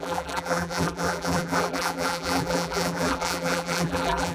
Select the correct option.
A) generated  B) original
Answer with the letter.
A